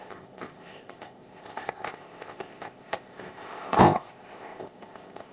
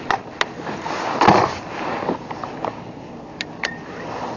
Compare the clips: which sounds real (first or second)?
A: second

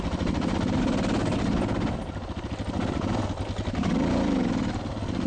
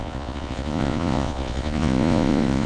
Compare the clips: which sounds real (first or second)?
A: first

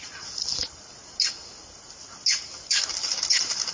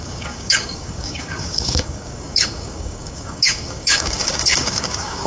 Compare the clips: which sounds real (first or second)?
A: first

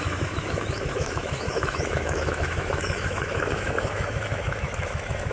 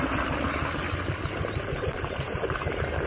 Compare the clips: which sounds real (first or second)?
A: second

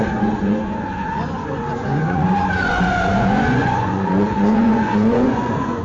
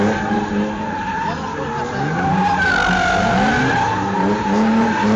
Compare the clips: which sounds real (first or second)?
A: second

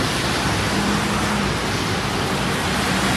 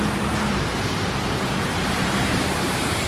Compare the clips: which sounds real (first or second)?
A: first